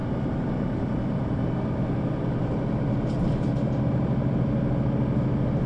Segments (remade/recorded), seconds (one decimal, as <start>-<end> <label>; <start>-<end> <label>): 0.0-5.7 recorded